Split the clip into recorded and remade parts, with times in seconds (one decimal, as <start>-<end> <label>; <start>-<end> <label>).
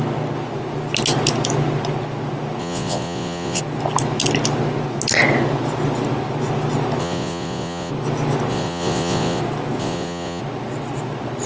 0.0-2.6 recorded; 2.6-3.6 remade; 3.6-7.0 recorded; 7.0-7.9 remade; 7.9-8.5 recorded; 8.5-9.4 remade; 9.4-9.8 recorded; 9.8-10.4 remade; 10.4-11.5 recorded